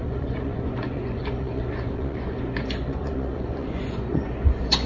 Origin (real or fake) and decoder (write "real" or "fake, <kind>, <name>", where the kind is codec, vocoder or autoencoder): fake, vocoder, Vocos